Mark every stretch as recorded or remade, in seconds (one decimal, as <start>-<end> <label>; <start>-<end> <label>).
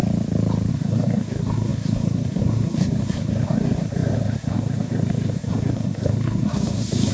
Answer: 0.0-0.7 recorded; 0.7-7.1 remade